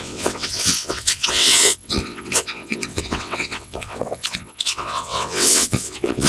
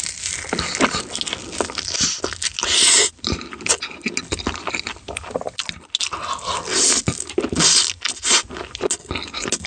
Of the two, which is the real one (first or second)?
second